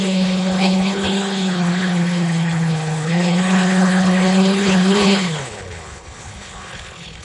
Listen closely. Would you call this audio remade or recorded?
remade